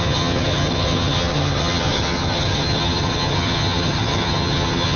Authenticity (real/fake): fake